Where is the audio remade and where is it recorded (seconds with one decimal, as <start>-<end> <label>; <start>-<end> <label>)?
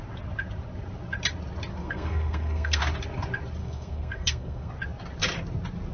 0.0-1.7 recorded; 1.7-2.8 remade; 2.8-3.6 recorded; 3.6-4.7 remade; 4.7-5.9 recorded